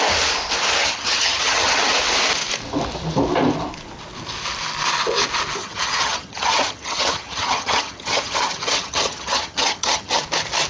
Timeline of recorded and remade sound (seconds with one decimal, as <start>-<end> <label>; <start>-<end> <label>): 0.0-0.8 recorded; 0.8-1.9 remade; 1.9-5.6 recorded; 5.6-10.2 remade; 10.2-10.7 recorded